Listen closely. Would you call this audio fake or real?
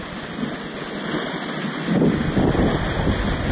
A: real